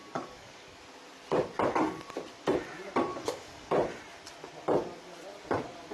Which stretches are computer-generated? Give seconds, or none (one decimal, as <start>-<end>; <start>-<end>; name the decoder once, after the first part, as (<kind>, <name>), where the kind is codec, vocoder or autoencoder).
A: 0.0-0.8 (codec, DAC); 3.1-3.7